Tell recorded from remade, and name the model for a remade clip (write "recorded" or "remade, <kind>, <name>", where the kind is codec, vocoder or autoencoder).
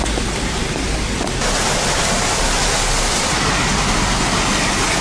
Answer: recorded